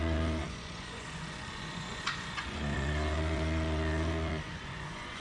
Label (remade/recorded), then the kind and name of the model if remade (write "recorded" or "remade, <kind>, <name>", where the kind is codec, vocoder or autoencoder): remade, vocoder, Vocos